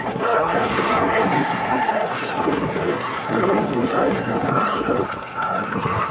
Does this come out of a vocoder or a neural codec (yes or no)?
yes